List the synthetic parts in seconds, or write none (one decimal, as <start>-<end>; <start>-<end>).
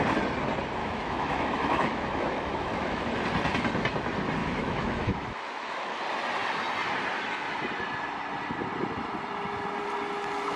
0.8-3.0; 4.4-6.0